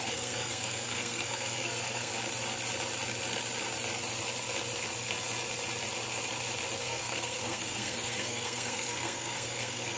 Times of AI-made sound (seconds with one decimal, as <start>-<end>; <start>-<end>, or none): 0.0-2.1; 6.8-10.0